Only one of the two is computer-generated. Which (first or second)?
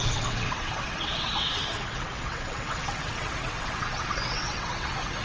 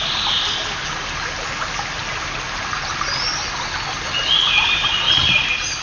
first